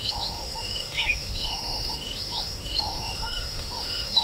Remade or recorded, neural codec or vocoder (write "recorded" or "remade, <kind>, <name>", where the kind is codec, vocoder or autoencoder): remade, autoencoder, DAC-VAE